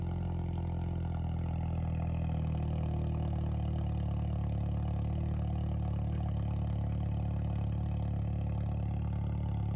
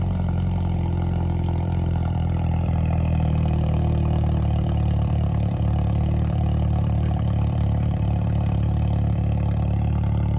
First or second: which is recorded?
first